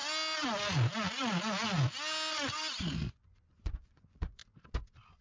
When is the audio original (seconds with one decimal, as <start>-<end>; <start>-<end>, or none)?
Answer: 0.0-3.1; 4.4-5.2

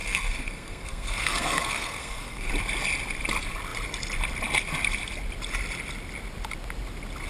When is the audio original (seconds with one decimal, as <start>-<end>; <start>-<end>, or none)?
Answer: 2.5-7.3

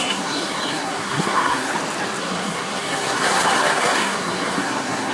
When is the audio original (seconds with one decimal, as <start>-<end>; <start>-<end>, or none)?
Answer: 1.7-2.2

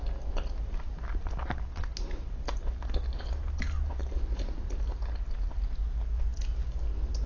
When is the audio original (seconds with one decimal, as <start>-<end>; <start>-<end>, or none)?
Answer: 0.0-7.3

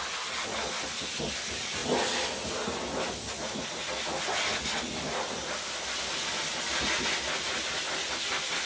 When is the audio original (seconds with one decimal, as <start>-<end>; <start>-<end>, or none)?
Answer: 0.0-8.7

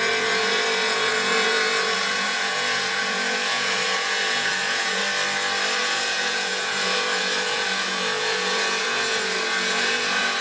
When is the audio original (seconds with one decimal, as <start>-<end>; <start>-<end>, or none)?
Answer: 5.0-5.8

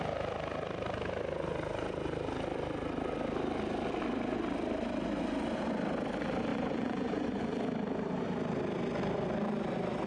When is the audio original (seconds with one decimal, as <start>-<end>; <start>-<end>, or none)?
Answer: 0.0-6.5; 7.4-10.1